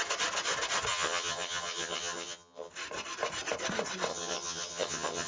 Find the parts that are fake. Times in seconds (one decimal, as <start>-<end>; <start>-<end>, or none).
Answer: 0.9-2.7; 4.1-5.3